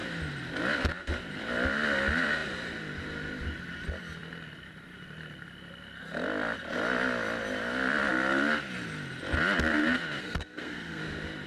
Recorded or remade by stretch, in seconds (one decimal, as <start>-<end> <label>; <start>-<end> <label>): 0.0-10.2 recorded; 10.2-11.0 remade; 11.0-11.5 recorded